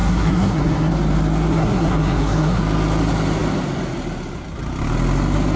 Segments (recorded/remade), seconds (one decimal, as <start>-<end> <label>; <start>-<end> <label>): 0.0-0.9 remade; 0.9-1.5 recorded; 1.5-2.6 remade; 2.6-5.6 recorded